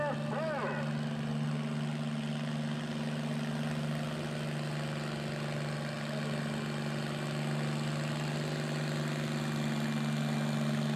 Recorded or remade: recorded